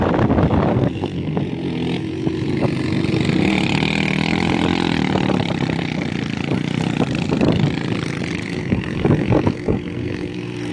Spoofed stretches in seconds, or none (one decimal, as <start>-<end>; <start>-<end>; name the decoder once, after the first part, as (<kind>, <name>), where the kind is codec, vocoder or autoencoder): 0.7-1.4 (codec, SNAC); 8.4-10.7